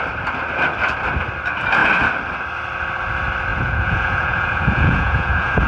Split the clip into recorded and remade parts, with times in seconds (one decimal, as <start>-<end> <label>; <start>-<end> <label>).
0.0-3.5 recorded; 3.5-5.7 remade